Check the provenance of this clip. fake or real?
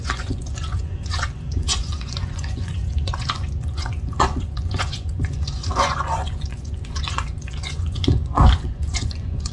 fake